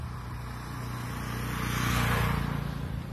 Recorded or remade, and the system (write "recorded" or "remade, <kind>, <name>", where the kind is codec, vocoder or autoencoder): recorded